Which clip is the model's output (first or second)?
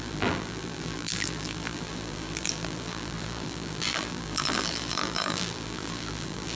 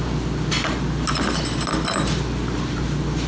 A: first